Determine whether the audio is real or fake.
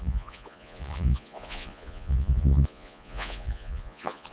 fake